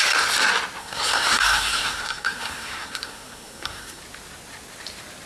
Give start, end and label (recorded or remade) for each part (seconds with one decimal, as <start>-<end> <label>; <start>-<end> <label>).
0.0-0.8 recorded; 0.8-4.0 remade; 4.0-5.3 recorded